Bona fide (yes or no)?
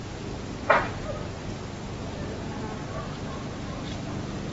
yes